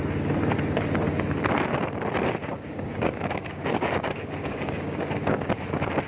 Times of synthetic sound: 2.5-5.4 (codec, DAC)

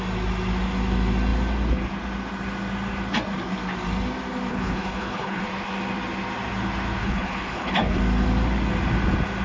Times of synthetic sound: 4.5-5.4 (codec, HILCodec); 7.0-8.0

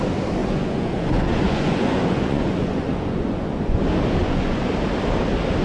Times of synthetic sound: 0.4-3.8 (vocoder, Vocos); 4.2-4.7

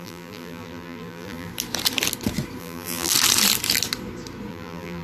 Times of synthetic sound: 0.0-1.5 (vocoder, BigVGAN v2); 2.6-3.1; 4.5-5.0